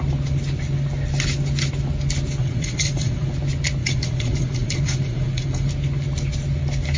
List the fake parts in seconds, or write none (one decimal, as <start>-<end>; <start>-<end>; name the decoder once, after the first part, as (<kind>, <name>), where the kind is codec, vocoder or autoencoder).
2.4-3.3 (vocoder, Vocos); 3.8-5.7